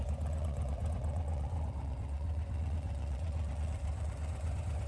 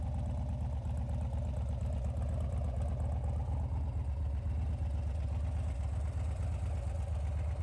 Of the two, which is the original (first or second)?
second